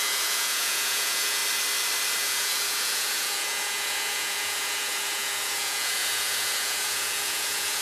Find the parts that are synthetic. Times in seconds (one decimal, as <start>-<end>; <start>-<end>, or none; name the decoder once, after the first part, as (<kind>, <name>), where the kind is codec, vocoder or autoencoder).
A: 0.0-1.4 (vocoder, Vocos); 2.2-7.8